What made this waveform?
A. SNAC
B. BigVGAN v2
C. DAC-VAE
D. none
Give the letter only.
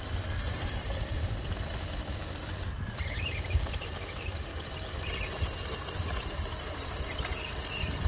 B